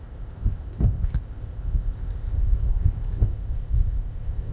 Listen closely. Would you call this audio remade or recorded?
remade